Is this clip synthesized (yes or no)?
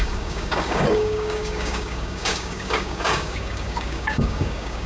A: yes